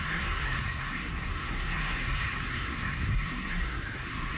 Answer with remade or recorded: remade